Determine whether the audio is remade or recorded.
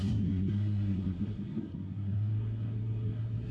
remade